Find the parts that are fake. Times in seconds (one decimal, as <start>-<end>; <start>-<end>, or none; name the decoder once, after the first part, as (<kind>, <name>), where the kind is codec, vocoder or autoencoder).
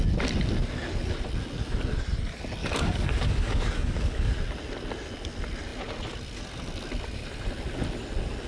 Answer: 2.6-4.3 (codec, DAC)